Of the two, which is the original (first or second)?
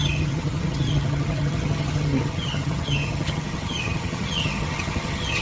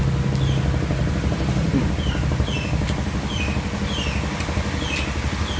second